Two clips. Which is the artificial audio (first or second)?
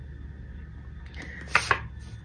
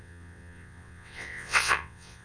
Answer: second